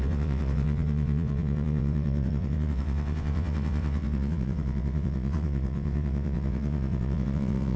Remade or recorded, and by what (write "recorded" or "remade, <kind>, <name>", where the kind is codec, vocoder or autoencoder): remade, vocoder, WaveNeXt